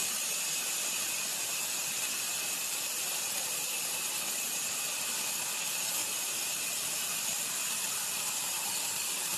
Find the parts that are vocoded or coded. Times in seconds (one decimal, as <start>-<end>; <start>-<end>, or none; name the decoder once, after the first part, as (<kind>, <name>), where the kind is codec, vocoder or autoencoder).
6.0-6.6 (vocoder, BigVGAN v2)